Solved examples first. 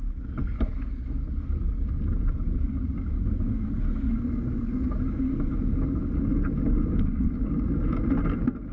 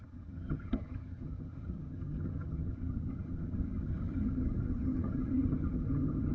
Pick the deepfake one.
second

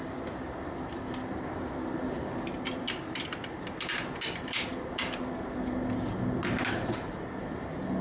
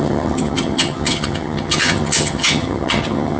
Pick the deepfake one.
second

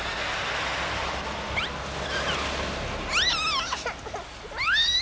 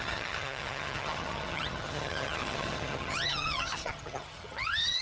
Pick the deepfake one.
second